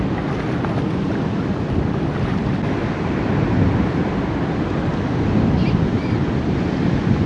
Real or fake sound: real